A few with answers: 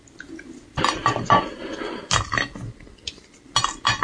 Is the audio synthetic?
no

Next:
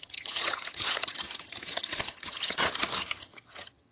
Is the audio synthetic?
yes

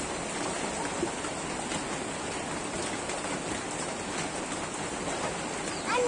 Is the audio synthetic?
no